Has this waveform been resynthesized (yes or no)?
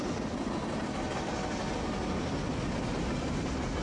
no